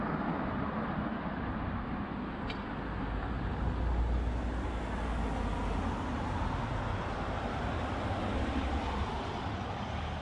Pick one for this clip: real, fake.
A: real